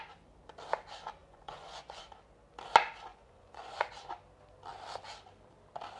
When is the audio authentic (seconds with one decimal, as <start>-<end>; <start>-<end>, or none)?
0.0-1.2; 2.0-3.1; 3.9-6.0